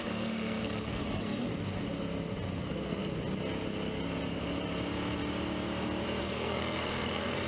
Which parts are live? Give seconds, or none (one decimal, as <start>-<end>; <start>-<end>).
1.5-2.6; 3.0-6.2